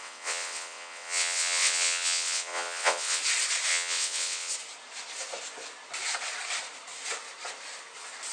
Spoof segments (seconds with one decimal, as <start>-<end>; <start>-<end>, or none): 0.0-3.2; 3.7-4.5